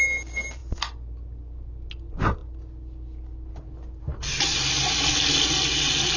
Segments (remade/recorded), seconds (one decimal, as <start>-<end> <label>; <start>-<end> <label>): 0.0-6.2 recorded